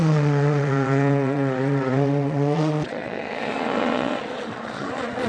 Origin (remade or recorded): remade